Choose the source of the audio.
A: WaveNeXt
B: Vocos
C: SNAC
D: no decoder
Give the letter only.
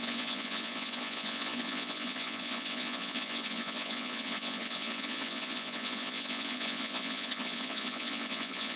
B